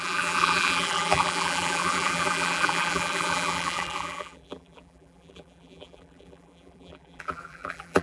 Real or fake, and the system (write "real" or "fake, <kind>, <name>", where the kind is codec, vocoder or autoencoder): fake, vocoder, BigVGAN v2